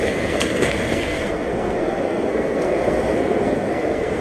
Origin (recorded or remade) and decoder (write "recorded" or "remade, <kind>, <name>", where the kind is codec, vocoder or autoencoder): remade, codec, SNAC